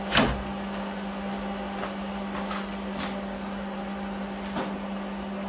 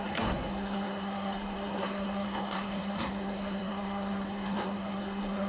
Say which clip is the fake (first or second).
second